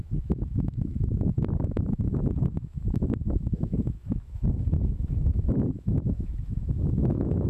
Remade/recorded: remade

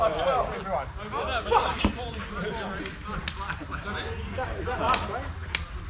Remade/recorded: recorded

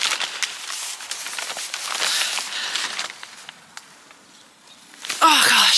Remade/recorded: recorded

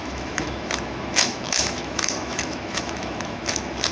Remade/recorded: remade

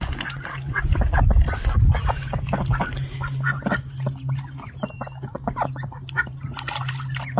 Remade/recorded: recorded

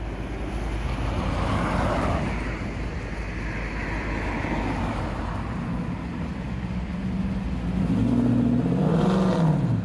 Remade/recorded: recorded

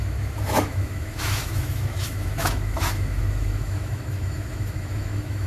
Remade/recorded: remade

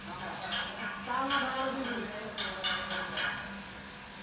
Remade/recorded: recorded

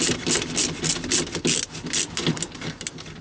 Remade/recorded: recorded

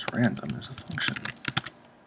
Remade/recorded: recorded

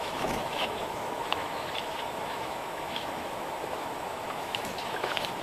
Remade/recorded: remade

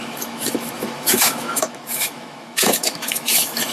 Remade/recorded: remade